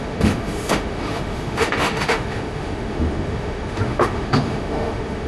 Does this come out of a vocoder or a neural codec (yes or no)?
yes